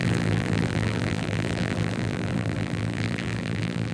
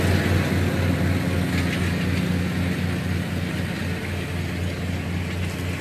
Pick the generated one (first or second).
first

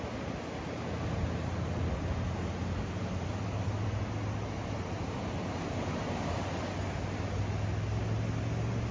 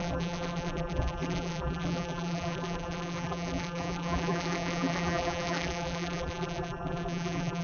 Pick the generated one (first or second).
second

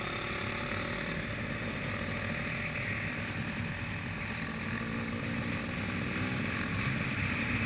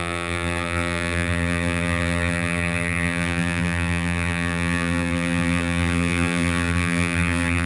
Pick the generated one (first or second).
second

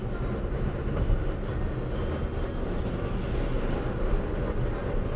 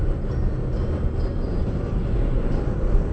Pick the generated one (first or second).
second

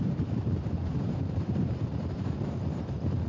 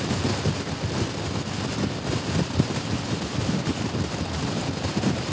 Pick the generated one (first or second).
first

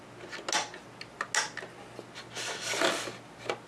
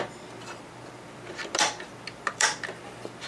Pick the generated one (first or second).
second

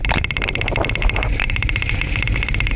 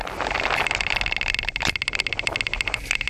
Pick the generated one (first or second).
first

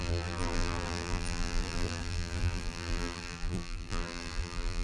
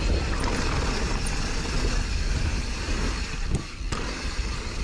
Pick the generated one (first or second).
first